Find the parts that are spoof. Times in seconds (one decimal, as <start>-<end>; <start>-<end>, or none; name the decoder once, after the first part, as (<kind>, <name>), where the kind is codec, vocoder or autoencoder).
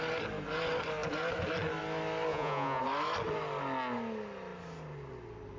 2.3-2.8 (vocoder, Vocos)